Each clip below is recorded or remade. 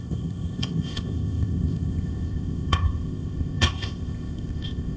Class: remade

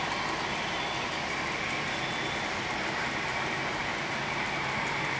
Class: recorded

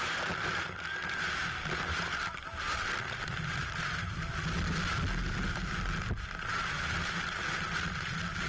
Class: recorded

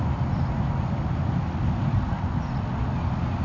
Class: recorded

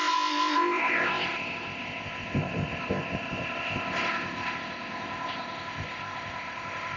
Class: remade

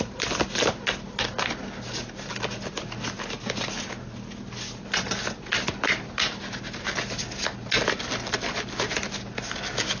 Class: recorded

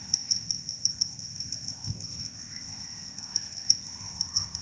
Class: remade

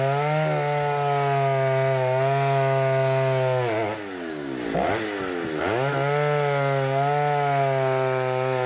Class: recorded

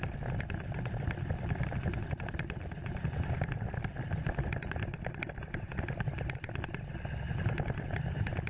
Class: recorded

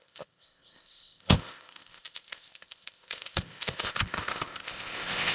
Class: remade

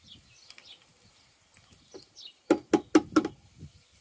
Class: recorded